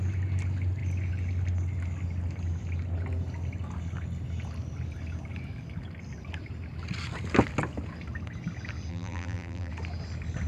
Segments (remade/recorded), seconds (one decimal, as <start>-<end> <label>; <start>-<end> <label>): 0.0-8.9 recorded; 8.9-9.7 remade; 9.7-10.5 recorded